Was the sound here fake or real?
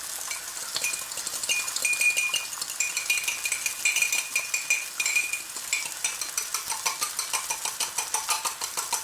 real